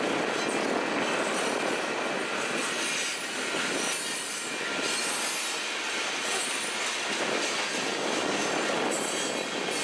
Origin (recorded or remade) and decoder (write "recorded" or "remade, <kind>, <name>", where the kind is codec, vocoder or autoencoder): recorded